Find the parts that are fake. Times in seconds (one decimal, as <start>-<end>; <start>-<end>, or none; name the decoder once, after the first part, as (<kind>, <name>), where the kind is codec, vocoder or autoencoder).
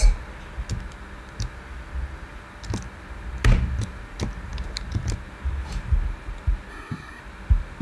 6.7-7.2 (codec, SNAC)